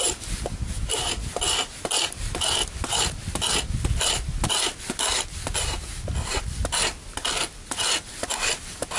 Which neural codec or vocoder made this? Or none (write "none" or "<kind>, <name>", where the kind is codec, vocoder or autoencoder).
none